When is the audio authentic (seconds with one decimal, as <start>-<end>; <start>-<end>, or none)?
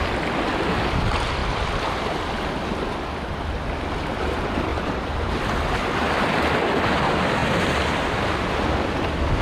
0.0-4.7; 5.4-7.4; 8.2-9.4